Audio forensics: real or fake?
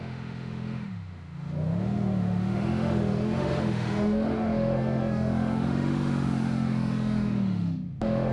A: fake